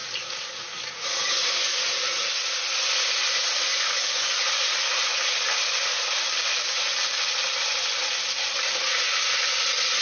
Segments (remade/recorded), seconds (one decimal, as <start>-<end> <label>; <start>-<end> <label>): 0.0-1.8 remade; 1.8-3.7 recorded; 3.7-4.4 remade; 4.4-10.0 recorded